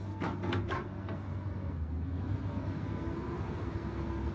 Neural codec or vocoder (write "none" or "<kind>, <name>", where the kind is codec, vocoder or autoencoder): codec, SNAC